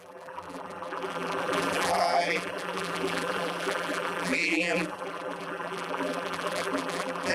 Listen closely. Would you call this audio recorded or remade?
remade